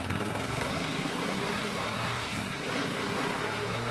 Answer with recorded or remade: remade